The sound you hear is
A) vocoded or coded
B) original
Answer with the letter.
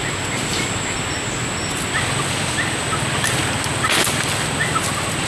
B